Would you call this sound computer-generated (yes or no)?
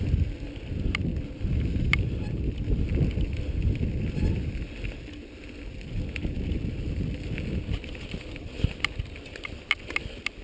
no